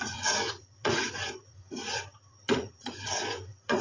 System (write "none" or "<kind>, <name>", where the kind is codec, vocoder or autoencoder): vocoder, Vocos